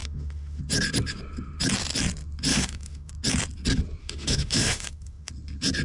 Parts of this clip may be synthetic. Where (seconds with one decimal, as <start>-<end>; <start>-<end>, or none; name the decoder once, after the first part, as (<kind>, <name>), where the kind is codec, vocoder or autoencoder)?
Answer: 0.0-0.6 (autoencoder, DAC-VAE); 2.5-3.1; 4.0-5.3